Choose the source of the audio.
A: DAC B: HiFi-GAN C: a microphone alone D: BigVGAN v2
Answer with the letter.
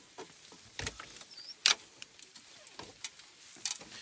C